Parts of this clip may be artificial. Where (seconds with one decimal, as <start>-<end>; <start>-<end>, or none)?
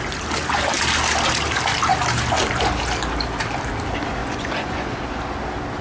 4.2-5.0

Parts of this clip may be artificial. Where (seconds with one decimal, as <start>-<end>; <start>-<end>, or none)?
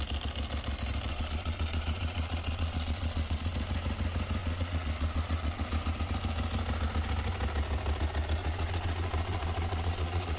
1.1-3.5; 4.4-5.6; 8.4-10.4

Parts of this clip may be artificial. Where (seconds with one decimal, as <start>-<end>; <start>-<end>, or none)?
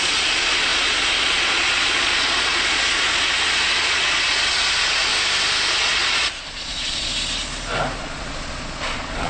0.0-5.1; 5.7-7.1; 8.0-9.3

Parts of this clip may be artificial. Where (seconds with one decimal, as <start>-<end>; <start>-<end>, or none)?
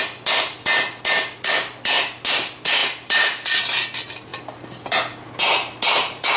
none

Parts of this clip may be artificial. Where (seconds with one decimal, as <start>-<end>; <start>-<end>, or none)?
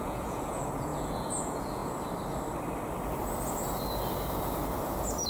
0.0-1.8